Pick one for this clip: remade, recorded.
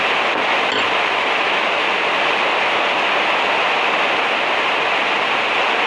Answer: recorded